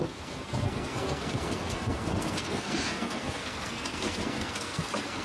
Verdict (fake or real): fake